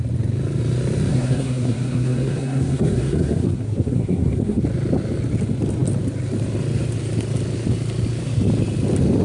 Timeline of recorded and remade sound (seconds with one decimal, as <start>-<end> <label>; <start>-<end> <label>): 0.0-1.1 recorded; 1.1-4.6 remade; 4.6-9.2 recorded